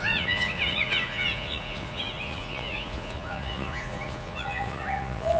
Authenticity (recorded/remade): remade